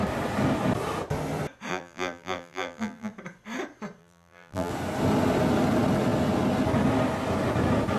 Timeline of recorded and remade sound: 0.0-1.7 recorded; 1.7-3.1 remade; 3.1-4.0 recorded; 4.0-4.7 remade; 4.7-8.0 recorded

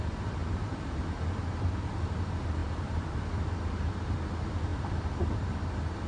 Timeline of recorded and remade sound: 0.0-0.4 recorded; 0.4-1.0 remade; 1.0-2.6 recorded; 2.6-3.2 remade; 3.2-6.1 recorded

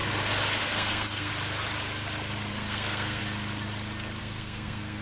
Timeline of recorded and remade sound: 0.0-0.6 recorded; 0.6-1.3 remade; 1.3-2.5 recorded; 2.5-3.2 remade; 3.2-4.2 recorded; 4.2-5.0 remade

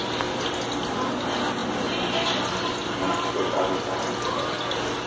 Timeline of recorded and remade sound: 0.0-5.1 recorded

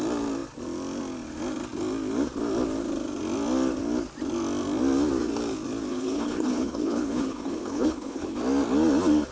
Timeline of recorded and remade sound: 0.0-5.9 recorded; 5.9-8.4 remade; 8.4-9.3 recorded

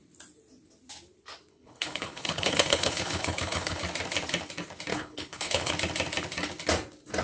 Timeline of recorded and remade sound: 0.0-1.5 recorded; 1.5-3.8 remade; 3.8-4.9 recorded; 4.9-5.7 remade; 5.7-7.2 recorded